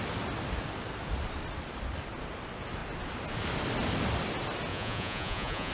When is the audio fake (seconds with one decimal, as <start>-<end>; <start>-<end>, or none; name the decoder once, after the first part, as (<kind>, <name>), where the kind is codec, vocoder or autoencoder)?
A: 4.7-5.7 (vocoder, Vocos)